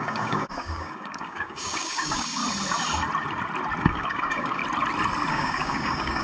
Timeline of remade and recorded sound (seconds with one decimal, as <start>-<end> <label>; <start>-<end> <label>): 0.0-2.4 remade; 2.4-3.8 recorded; 3.8-4.6 remade; 4.6-5.3 recorded; 5.3-6.2 remade